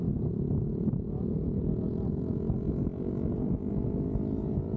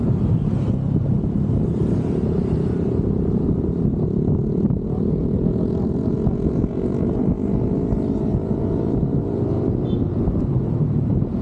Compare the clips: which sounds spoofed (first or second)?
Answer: second